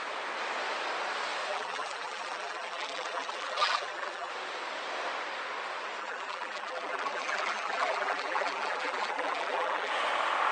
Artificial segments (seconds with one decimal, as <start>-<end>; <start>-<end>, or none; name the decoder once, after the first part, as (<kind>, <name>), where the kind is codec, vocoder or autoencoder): 1.5-4.3 (vocoder, BigVGAN v2); 6.0-9.9